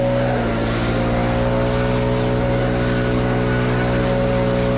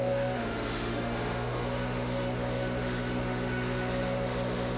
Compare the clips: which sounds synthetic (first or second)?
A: second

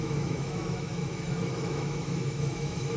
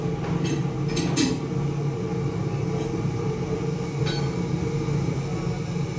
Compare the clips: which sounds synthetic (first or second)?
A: first